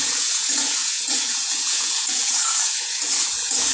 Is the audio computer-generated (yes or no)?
yes